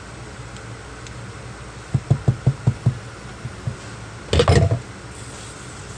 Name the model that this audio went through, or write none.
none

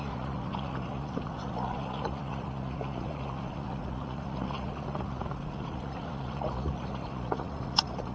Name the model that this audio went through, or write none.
vocoder, Vocos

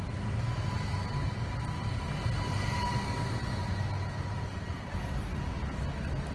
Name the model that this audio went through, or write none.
none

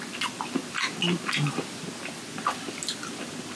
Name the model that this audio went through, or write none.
none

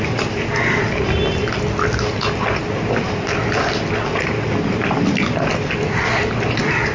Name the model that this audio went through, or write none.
none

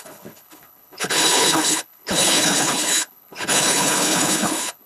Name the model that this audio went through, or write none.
codec, HILCodec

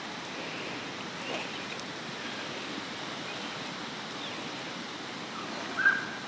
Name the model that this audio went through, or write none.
none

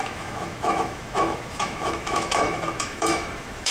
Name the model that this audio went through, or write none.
autoencoder, DAC-VAE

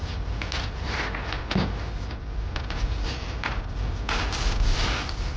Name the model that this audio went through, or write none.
none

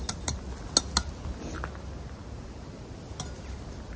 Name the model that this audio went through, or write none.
none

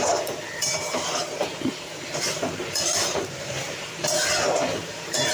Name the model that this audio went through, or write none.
vocoder, BigVGAN v2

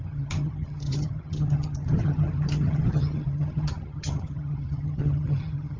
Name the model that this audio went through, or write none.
vocoder, HiFi-GAN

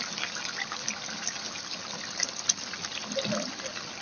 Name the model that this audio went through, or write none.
none